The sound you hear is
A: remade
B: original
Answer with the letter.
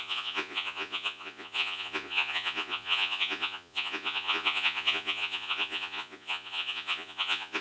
A